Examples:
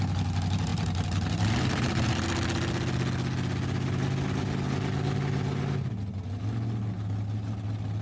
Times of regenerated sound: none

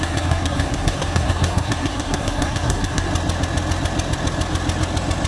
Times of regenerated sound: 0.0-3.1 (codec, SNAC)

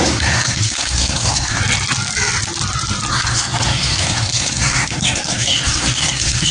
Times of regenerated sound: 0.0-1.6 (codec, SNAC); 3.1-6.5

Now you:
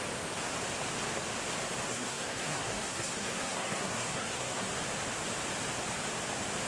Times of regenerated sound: 1.9-4.7 (codec, SNAC)

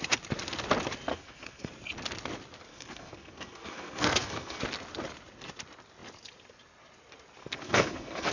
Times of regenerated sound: 1.1-1.7 (codec, SNAC); 2.7-4.6; 7.4-8.3

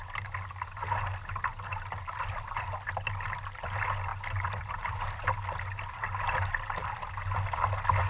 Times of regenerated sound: none